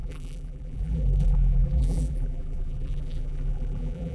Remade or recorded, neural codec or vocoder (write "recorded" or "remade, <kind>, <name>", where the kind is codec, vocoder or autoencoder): remade, vocoder, BigVGAN v2